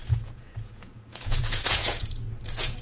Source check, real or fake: fake